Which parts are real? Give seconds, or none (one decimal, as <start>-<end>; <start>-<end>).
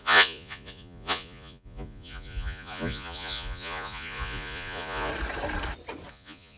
5.1-6.1